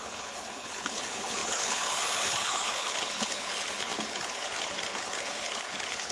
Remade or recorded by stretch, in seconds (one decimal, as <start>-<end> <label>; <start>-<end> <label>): 0.0-6.1 remade